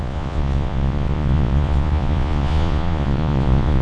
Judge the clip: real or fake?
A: fake